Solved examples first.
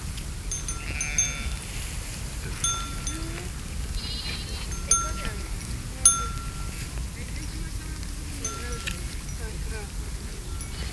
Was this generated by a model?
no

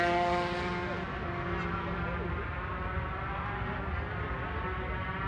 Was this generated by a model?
no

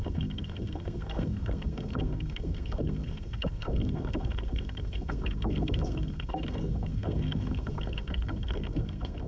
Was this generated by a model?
yes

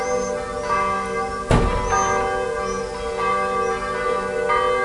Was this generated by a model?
no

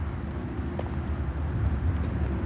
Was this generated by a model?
no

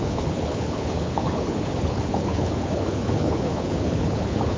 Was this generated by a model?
yes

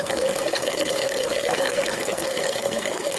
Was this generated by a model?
yes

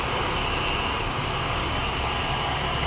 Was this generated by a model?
no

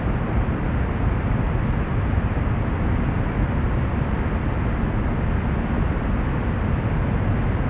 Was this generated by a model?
no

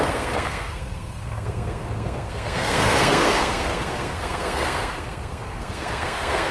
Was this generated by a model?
yes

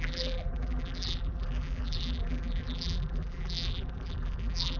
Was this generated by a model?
yes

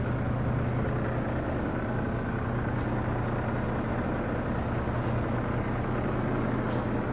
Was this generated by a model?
no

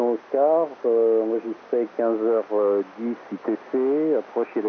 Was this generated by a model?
no